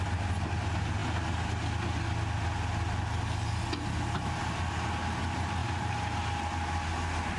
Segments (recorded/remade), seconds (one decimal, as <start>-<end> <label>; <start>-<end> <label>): 0.0-5.6 recorded; 5.6-6.2 remade; 6.2-7.4 recorded